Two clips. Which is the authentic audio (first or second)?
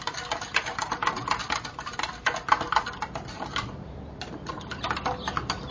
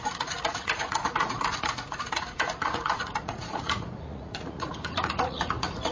first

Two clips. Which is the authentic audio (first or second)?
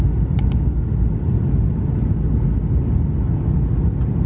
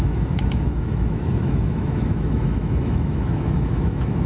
first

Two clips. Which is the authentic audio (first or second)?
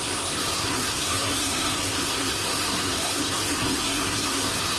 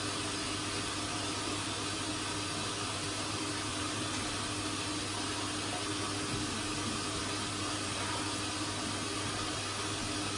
second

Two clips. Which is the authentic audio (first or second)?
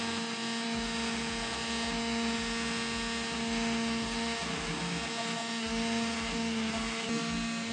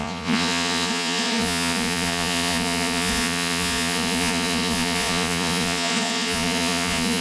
first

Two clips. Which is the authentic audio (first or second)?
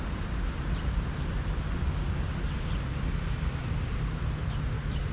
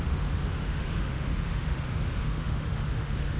first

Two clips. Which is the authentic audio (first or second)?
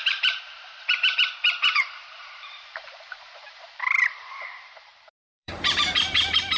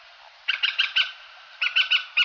second